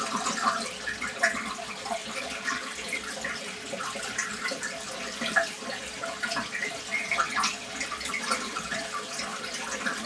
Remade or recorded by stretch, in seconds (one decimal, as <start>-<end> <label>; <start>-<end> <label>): 0.0-2.0 recorded; 2.0-2.5 remade; 2.5-4.2 recorded; 4.2-8.9 remade; 8.9-9.3 recorded; 9.3-10.1 remade